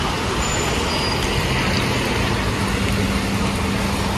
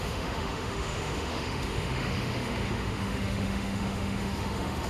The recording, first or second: first